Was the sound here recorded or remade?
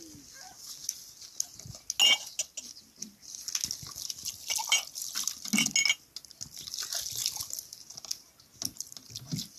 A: recorded